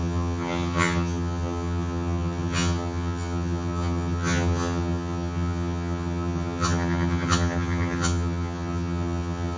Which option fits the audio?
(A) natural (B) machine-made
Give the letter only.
B